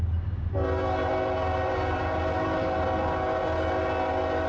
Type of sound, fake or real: real